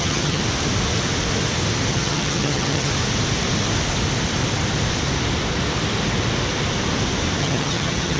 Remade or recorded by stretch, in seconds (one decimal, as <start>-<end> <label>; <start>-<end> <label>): 0.0-0.4 remade; 0.4-1.9 recorded; 1.9-2.9 remade; 2.9-7.4 recorded; 7.4-8.2 remade